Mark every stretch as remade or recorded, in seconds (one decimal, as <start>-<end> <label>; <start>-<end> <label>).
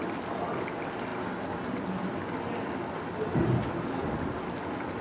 0.0-5.0 recorded